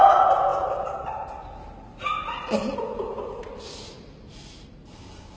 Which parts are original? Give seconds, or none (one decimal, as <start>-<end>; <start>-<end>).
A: 0.0-5.4